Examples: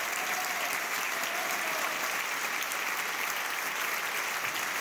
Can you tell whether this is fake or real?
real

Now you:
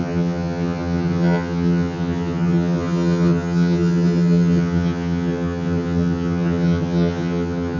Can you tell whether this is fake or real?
fake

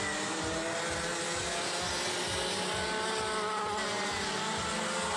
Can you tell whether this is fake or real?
real